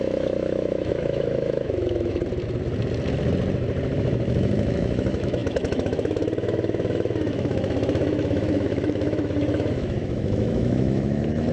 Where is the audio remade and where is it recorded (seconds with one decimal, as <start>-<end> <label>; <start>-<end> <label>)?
0.0-2.2 remade; 2.2-4.0 recorded; 4.0-11.5 remade